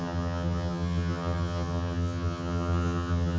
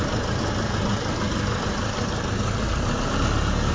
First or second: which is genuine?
second